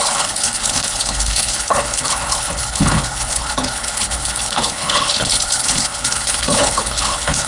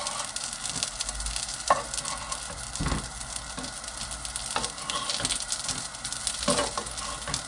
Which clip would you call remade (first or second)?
first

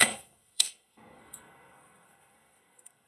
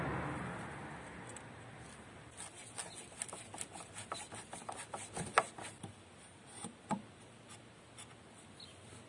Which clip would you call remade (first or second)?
first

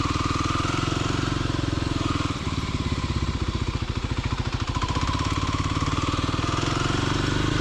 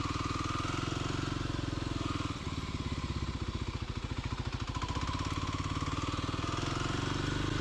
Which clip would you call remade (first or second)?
first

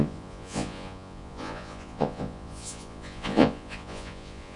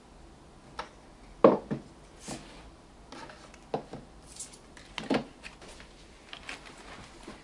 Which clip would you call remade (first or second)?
first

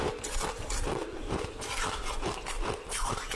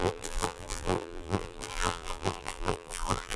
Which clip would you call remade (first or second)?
second